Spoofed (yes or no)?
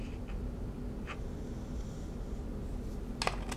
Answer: no